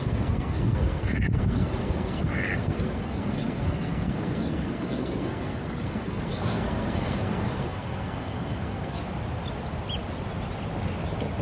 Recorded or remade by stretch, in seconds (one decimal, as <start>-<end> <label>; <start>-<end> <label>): 0.0-9.0 remade; 9.0-11.4 recorded